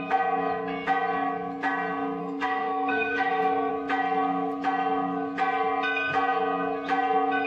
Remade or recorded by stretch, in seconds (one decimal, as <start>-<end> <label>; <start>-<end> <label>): 0.0-2.2 recorded; 2.2-3.7 remade; 3.7-7.5 recorded